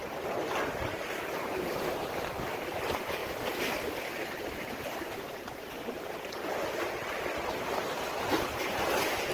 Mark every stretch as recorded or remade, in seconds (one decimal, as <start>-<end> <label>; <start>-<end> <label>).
0.0-3.2 remade; 3.2-5.4 recorded; 5.4-9.3 remade